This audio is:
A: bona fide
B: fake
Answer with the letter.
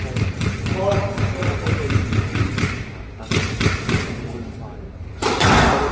A